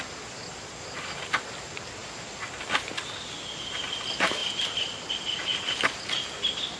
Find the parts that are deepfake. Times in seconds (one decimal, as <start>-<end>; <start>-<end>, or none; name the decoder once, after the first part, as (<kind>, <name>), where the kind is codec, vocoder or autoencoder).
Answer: none

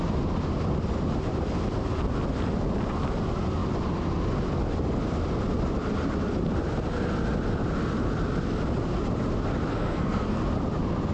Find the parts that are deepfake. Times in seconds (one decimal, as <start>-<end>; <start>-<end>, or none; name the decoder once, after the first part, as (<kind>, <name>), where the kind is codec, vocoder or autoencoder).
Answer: 9.7-10.4 (codec, SNAC)